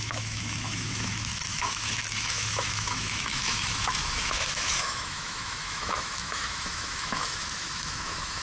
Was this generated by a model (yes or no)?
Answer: yes